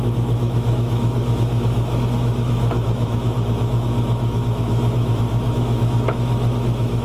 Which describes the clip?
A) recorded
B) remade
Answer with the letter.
B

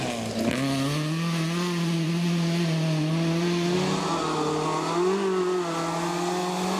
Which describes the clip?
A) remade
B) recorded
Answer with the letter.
B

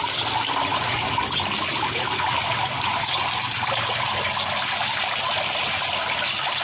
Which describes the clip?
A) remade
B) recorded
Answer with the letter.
B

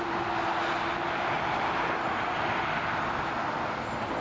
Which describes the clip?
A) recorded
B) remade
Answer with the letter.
A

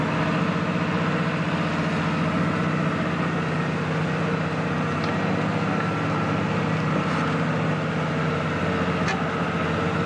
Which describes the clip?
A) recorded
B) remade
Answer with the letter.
A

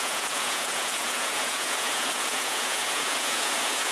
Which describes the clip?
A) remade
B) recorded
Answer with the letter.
A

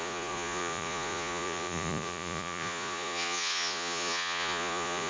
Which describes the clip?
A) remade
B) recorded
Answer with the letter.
A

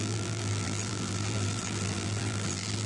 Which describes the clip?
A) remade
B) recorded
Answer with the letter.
A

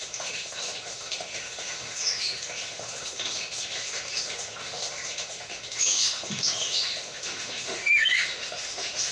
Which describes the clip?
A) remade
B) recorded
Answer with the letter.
A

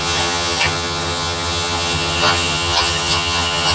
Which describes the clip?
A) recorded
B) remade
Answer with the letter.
B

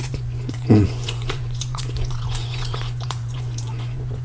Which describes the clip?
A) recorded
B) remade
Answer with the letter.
B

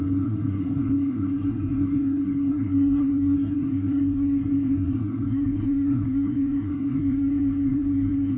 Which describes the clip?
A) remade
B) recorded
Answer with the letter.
A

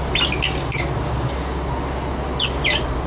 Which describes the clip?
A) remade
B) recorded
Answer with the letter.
B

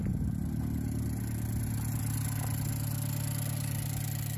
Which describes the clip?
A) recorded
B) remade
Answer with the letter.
A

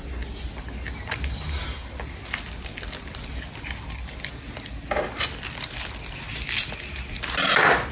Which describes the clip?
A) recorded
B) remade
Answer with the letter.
A